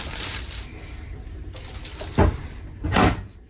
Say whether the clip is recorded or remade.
recorded